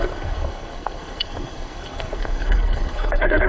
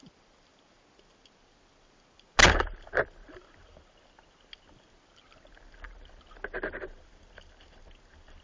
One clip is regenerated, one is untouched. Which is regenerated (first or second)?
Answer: first